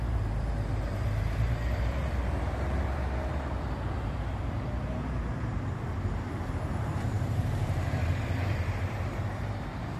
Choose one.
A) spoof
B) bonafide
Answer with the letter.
A